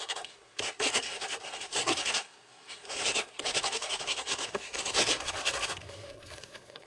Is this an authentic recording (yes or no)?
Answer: no